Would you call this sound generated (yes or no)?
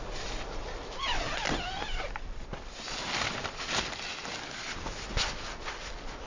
no